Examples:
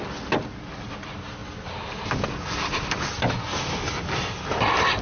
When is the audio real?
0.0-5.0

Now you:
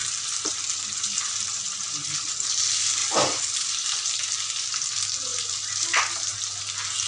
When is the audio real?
2.3-3.0; 4.0-5.3; 6.0-7.1

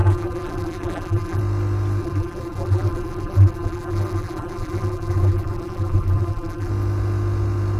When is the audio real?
1.4-2.0; 6.7-7.8

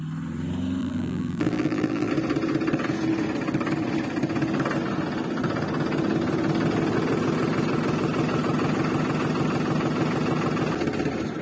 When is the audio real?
0.0-0.8; 2.1-11.4

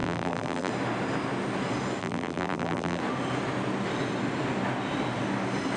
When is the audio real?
0.7-2.0; 3.0-5.8